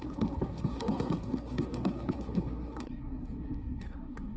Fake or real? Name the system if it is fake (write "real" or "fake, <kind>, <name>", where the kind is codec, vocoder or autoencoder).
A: fake, codec, SNAC